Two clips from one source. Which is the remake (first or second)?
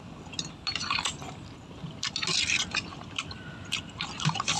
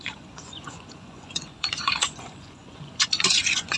second